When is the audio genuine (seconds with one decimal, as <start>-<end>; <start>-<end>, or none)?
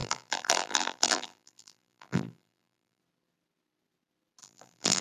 3.0-4.4